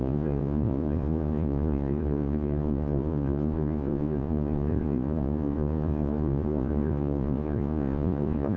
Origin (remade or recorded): remade